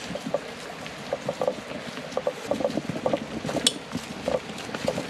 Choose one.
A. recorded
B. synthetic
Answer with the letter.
A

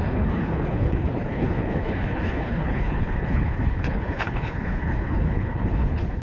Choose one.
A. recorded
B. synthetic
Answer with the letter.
B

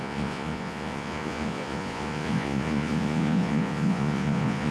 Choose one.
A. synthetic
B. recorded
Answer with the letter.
A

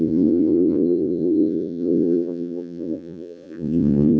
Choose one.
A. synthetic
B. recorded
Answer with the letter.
A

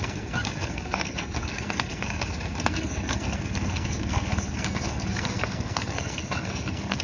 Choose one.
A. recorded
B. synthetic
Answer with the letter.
B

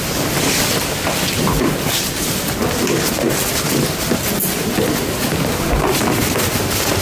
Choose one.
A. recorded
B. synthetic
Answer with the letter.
A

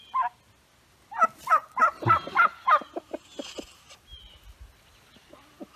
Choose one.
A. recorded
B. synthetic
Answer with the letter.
A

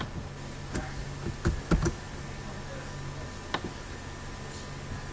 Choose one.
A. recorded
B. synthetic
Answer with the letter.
A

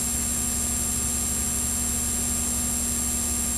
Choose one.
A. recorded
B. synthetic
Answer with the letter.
A